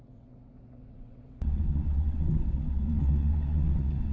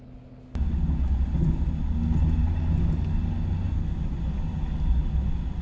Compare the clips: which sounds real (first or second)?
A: second